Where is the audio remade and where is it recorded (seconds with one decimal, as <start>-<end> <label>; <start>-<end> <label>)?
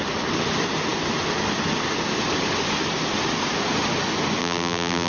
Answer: 0.0-4.4 recorded; 4.4-5.1 remade